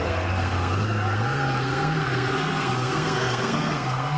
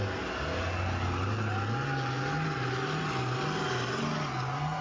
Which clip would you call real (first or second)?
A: second